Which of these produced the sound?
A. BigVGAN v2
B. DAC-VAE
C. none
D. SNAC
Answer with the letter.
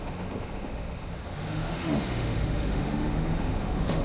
B